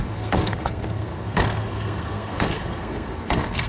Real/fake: fake